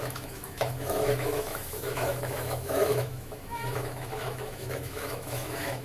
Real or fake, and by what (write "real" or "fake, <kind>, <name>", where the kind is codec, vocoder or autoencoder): fake, autoencoder, DAC-VAE